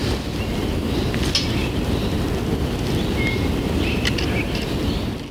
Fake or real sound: real